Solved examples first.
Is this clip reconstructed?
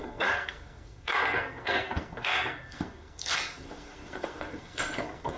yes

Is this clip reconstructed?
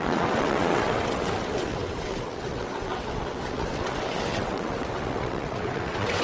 yes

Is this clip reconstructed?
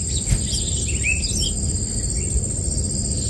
no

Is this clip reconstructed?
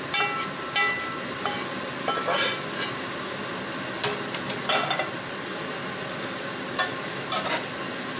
no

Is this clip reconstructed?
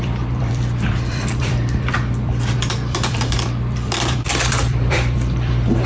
yes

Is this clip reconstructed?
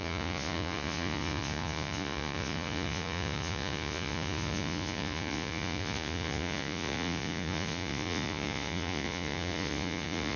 yes